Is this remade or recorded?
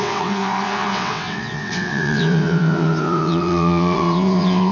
remade